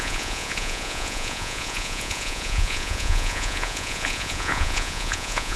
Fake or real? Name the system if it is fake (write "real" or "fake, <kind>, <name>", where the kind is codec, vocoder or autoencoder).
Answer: fake, vocoder, Vocos